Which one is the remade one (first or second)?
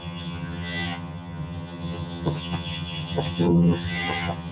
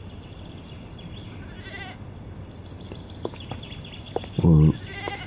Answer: first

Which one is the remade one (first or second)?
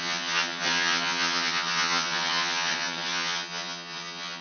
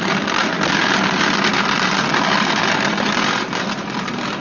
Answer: first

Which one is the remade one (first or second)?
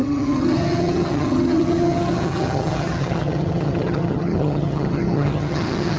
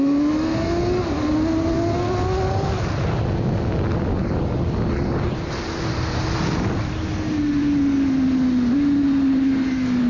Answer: first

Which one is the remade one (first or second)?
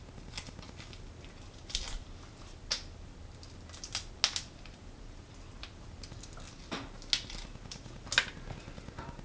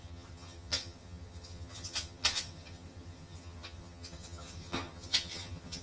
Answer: second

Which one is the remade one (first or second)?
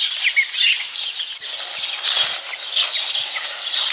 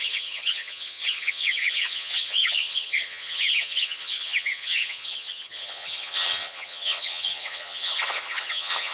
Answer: second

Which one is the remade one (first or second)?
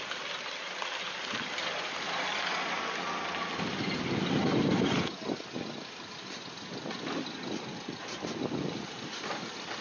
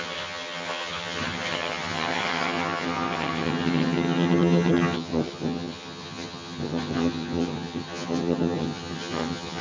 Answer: second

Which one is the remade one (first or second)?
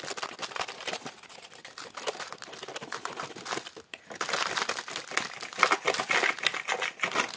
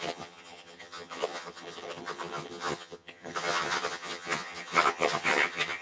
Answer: second